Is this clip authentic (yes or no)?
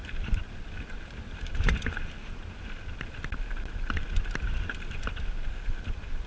yes